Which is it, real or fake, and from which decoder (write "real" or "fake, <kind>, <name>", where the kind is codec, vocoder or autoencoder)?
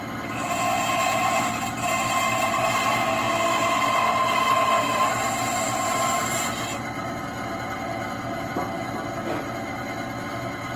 real